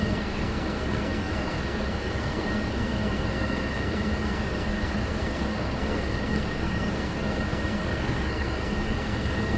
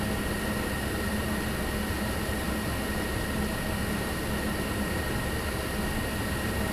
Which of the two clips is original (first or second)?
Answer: second